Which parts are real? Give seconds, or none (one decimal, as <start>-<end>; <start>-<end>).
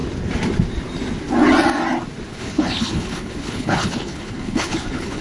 0.0-2.3